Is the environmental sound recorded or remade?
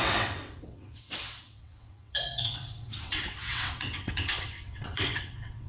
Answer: remade